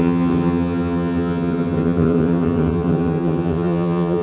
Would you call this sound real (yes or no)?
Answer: no